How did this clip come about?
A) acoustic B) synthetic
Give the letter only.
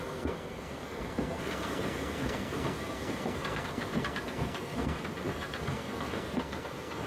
B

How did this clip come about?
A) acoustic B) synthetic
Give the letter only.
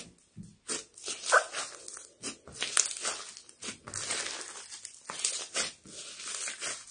A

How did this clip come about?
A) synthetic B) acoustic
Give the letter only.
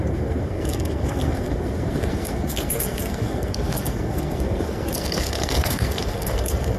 A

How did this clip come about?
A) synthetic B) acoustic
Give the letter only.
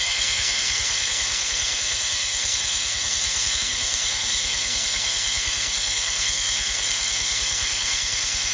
A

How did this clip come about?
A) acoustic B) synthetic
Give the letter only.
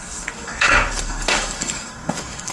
B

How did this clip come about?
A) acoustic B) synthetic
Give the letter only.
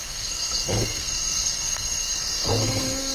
B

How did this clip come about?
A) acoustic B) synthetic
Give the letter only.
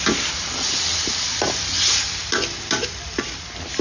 A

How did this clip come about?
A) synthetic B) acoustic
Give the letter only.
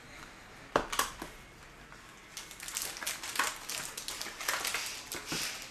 B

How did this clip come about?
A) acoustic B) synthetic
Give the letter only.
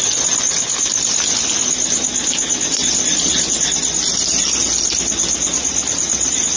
A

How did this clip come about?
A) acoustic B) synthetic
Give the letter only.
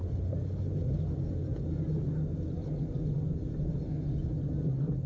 A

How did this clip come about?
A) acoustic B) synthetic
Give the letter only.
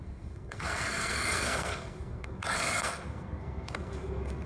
B